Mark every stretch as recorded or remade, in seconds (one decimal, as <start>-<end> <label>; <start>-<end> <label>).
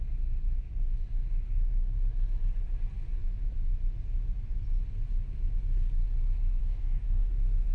0.0-6.6 recorded; 6.6-7.3 remade; 7.3-7.7 recorded